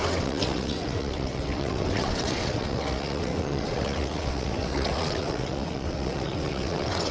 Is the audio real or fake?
fake